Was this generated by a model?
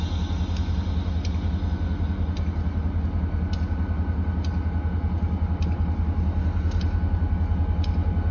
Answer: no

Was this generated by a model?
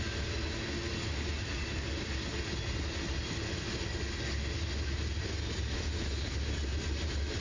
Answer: no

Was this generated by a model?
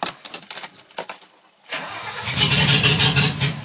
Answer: no